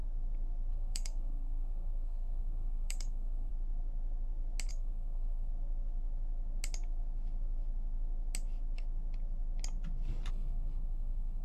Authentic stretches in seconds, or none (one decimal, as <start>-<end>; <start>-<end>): 0.0-0.7; 3.5-4.7; 5.5-10.3

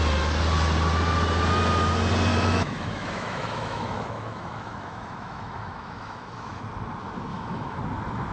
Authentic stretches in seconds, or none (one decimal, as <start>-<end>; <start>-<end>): 0.0-2.3; 6.6-7.3; 7.8-8.3